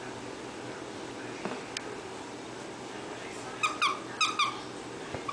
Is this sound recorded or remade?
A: recorded